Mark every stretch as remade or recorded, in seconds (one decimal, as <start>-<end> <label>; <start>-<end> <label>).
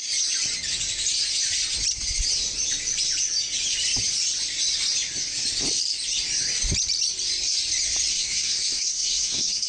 0.0-8.1 recorded; 8.1-9.7 remade